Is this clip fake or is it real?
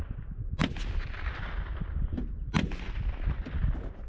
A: real